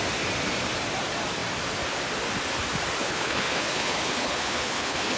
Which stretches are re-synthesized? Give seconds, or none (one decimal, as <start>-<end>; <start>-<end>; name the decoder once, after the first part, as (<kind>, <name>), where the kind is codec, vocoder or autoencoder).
3.0-5.2 (codec, HILCodec)